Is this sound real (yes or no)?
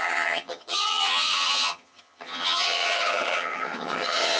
no